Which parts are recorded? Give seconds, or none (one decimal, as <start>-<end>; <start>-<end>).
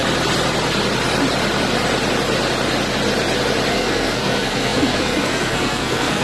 0.0-3.7